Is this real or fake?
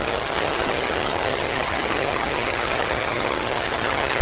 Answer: fake